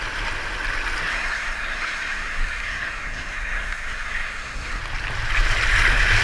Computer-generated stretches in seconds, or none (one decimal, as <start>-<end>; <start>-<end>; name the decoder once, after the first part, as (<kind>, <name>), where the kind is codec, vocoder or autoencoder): 1.1-4.8 (codec, SNAC)